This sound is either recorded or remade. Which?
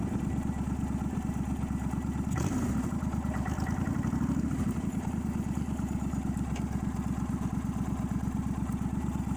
recorded